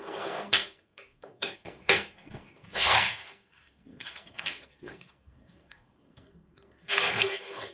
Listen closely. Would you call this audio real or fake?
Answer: fake